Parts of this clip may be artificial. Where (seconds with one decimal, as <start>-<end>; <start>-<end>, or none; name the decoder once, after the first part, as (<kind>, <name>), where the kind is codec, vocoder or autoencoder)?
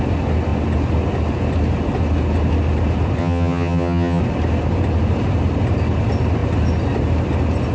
3.2-4.2 (vocoder, HiFi-GAN)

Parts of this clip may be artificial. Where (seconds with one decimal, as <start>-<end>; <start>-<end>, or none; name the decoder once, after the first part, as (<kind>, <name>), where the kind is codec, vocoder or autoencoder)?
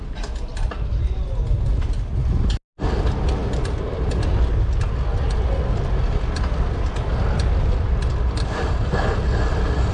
none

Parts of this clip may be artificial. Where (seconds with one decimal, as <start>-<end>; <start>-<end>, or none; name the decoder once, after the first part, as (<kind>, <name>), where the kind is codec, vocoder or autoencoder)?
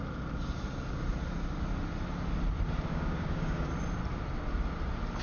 2.9-3.7 (codec, DAC)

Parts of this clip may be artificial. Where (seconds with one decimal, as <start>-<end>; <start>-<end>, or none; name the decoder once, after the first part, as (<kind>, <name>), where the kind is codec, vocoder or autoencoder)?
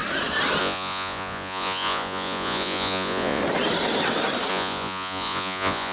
0.6-3.4 (vocoder, Vocos); 4.5-5.9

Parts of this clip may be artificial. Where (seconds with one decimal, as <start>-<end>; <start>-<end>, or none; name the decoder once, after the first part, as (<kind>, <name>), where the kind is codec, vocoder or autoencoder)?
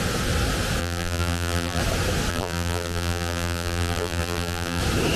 0.8-1.8 (vocoder, BigVGAN v2); 2.3-4.8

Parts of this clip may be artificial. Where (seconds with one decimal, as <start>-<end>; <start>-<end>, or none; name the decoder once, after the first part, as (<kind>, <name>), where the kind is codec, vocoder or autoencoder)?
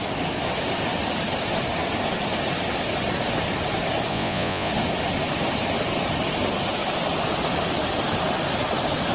4.1-4.7 (vocoder, Vocos)